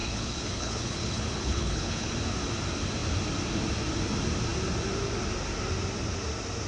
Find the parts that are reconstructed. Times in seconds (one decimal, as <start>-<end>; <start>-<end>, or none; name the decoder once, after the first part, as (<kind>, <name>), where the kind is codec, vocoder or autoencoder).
0.0-2.1 (codec, HILCodec)